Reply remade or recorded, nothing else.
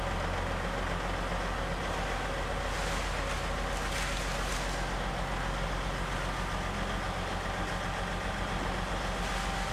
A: recorded